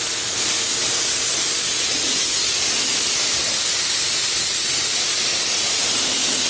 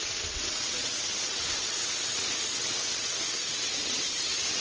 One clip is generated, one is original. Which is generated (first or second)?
second